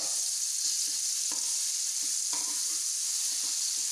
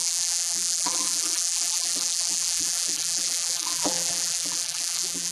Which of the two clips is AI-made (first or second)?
second